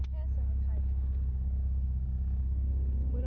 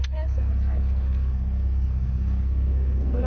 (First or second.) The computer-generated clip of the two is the second